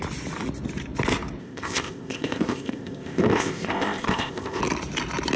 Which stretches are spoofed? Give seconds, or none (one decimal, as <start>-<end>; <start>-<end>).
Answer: 1.4-4.6